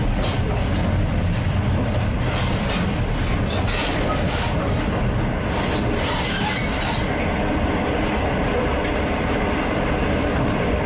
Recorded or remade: recorded